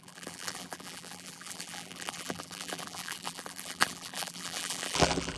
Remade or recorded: remade